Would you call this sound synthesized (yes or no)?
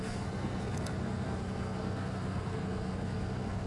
yes